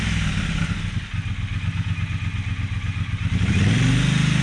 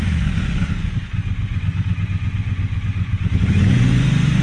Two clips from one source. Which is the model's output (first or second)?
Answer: second